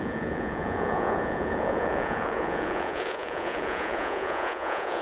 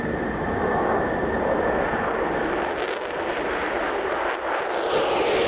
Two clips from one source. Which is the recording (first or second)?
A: second